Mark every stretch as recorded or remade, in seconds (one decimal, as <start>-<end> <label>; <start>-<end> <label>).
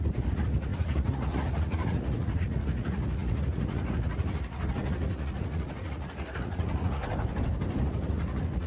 0.0-7.0 remade; 7.0-7.8 recorded; 7.8-8.7 remade